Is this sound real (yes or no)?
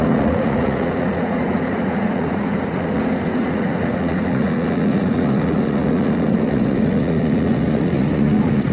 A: no